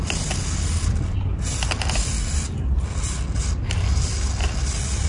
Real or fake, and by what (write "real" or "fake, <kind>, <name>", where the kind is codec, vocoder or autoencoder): real